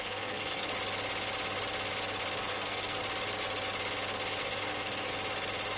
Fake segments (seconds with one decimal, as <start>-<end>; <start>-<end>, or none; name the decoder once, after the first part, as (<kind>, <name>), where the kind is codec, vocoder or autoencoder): 0.0-0.7 (codec, SNAC); 2.4-3.0; 4.4-5.1